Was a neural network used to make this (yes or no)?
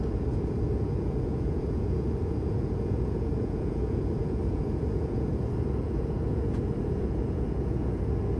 yes